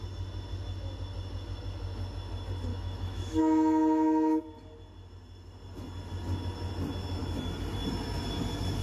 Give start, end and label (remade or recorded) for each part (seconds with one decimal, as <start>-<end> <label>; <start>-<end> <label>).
0.0-2.7 recorded; 2.7-4.4 remade; 4.4-8.8 recorded